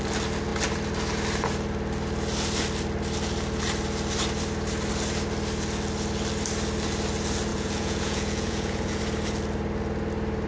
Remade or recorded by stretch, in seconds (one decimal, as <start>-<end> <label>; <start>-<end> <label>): 0.0-7.5 recorded; 7.5-9.0 remade; 9.0-10.5 recorded

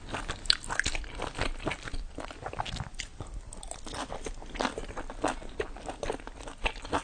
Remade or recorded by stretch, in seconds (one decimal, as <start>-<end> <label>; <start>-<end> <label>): 0.0-7.0 recorded

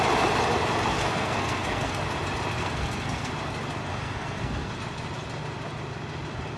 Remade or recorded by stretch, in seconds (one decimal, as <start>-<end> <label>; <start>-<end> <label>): 0.0-0.9 recorded; 0.9-2.0 remade; 2.0-2.6 recorded; 2.6-3.3 remade; 3.3-3.9 recorded; 3.9-4.7 remade; 4.7-6.6 recorded

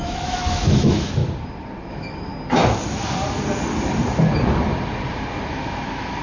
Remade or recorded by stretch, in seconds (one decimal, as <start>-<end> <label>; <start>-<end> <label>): 0.0-1.2 remade; 1.2-1.9 recorded; 1.9-2.3 remade; 2.3-5.5 recorded; 5.5-6.2 remade